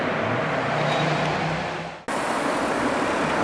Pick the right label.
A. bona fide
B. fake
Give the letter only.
A